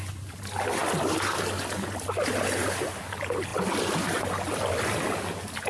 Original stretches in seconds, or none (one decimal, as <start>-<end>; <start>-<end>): 0.0-5.7